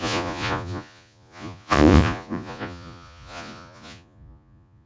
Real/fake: fake